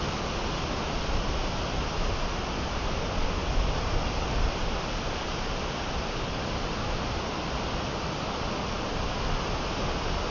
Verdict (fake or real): real